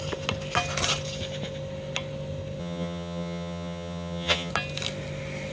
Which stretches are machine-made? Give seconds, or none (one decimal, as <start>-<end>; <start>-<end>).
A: 2.6-4.5